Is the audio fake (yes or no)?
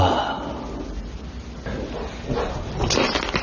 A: no